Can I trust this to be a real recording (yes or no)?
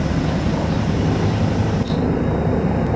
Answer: yes